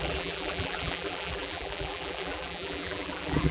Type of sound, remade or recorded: remade